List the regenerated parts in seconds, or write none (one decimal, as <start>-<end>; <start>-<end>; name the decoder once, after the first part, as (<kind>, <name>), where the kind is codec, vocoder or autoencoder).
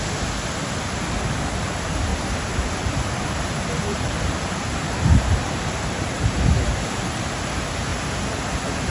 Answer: 2.1-7.0 (vocoder, BigVGAN v2)